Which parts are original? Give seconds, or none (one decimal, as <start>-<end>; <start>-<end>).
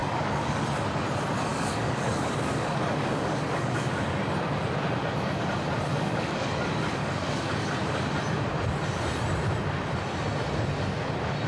0.6-1.5; 4.2-5.9; 8.1-11.5